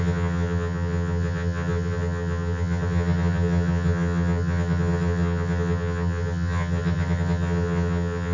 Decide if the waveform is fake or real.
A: fake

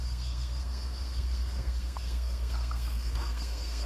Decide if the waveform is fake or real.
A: fake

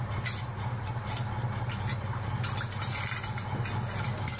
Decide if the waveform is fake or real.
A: real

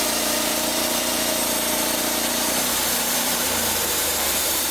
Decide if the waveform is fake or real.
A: fake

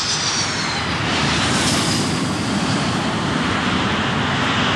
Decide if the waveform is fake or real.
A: real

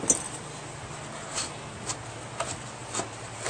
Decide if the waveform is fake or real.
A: real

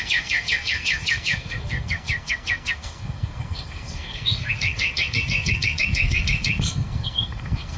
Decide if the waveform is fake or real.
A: fake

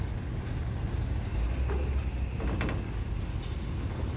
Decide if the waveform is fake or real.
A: real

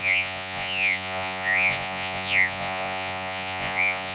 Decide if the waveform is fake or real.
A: fake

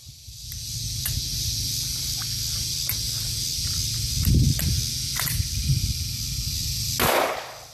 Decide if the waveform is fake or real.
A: real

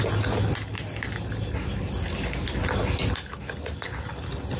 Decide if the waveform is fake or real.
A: real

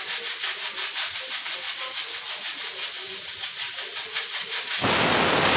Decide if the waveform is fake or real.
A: real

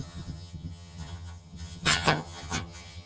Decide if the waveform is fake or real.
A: fake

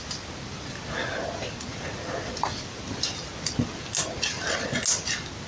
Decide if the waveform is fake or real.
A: real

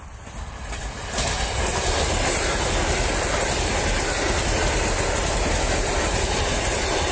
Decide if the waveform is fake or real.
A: real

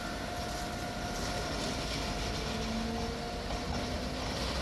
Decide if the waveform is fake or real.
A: real